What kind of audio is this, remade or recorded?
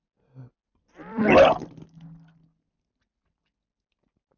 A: recorded